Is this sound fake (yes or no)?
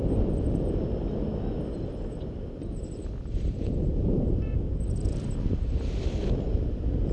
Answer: no